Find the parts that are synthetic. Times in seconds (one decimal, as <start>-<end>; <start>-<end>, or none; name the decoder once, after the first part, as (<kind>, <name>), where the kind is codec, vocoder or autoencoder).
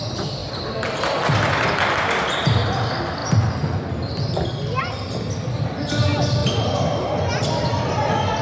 none